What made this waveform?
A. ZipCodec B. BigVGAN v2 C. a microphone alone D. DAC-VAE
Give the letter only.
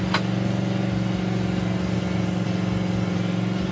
C